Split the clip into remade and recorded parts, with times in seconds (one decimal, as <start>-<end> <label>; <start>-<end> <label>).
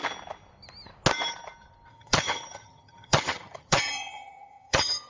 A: 0.0-1.9 recorded; 1.9-5.1 remade